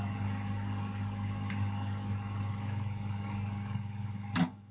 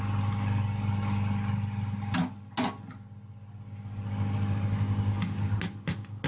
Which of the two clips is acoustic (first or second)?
second